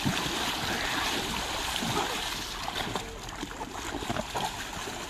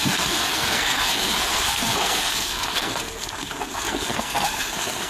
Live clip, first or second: first